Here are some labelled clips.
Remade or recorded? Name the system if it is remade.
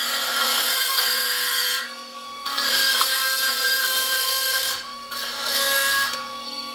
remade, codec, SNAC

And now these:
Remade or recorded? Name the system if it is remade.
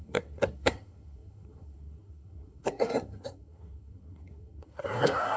remade, codec, SNAC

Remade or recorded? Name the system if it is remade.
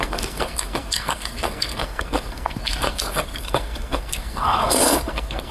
remade, codec, SNAC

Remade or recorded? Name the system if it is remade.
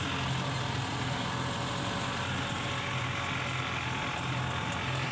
recorded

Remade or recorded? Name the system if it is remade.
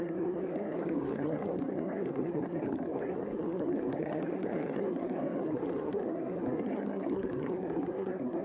remade, codec, SNAC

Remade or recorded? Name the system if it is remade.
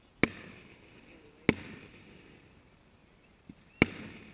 recorded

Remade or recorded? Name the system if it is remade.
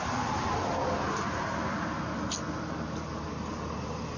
recorded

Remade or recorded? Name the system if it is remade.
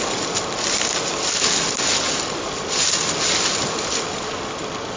recorded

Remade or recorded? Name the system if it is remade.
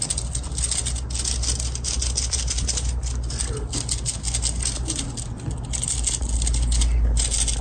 recorded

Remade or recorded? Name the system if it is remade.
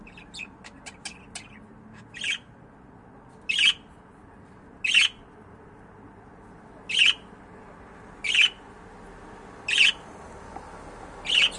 recorded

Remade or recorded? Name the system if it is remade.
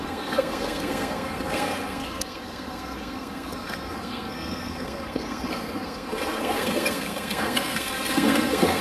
remade, codec, SNAC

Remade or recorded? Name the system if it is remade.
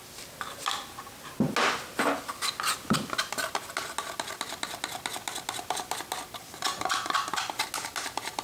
recorded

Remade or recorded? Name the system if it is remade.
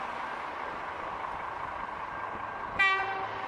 recorded